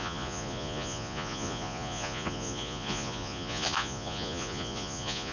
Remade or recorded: remade